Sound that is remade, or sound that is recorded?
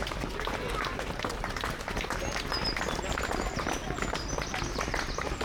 recorded